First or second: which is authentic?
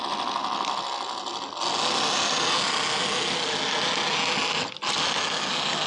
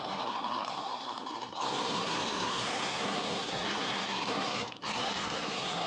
first